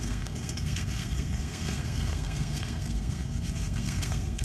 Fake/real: fake